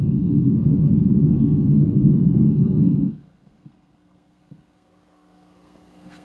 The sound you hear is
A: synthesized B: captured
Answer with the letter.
A